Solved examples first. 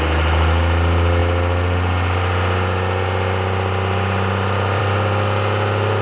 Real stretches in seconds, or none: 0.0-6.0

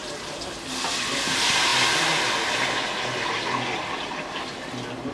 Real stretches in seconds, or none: 0.0-5.1

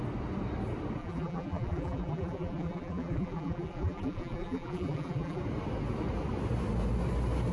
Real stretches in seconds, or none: 0.0-1.0; 5.4-7.5

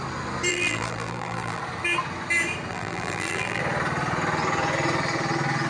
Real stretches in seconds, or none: 0.0-0.5; 1.6-2.7; 3.6-5.7

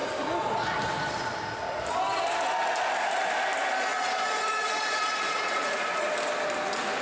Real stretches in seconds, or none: 0.0-3.9; 6.1-7.0

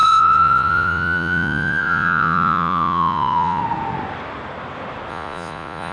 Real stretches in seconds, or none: 3.6-5.1

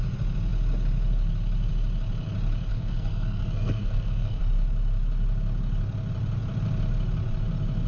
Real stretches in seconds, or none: 0.0-2.7; 4.4-7.9

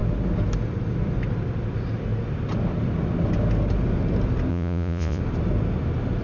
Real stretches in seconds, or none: 0.0-4.5; 5.2-6.2